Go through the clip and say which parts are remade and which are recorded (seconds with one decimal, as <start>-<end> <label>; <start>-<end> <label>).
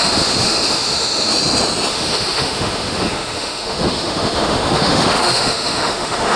0.0-1.3 remade; 1.3-1.9 recorded; 1.9-6.4 remade